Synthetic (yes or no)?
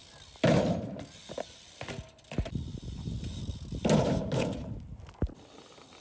no